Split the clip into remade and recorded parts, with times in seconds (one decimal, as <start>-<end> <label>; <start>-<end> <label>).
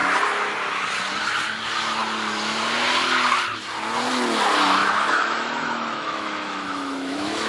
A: 0.0-4.8 recorded; 4.8-7.5 remade